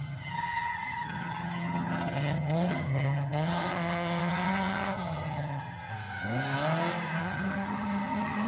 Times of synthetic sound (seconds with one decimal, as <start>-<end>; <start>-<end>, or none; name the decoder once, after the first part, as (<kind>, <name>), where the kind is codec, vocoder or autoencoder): 0.0-5.9 (vocoder, HiFi-GAN); 7.2-8.5